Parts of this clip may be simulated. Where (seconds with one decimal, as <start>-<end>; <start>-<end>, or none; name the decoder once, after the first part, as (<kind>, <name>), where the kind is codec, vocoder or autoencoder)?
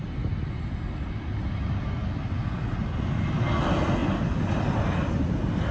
none